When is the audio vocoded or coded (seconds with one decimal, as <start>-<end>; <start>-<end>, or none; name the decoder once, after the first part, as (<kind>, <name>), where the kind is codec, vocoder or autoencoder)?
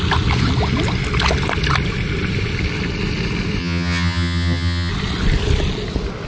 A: 3.6-4.9 (vocoder, HiFi-GAN)